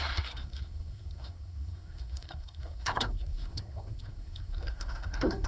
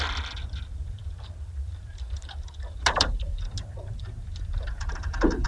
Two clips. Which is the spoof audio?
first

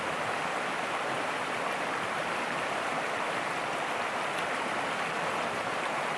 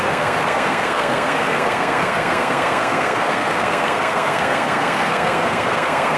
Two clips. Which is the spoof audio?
second